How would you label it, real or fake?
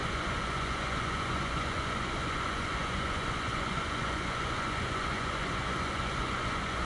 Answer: fake